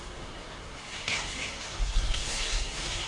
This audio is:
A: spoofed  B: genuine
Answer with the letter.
A